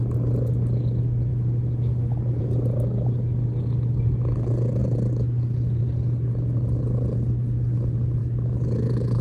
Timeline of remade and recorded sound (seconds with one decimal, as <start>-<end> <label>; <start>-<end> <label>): 0.0-1.3 recorded; 1.3-2.4 remade; 2.4-8.2 recorded; 8.2-9.2 remade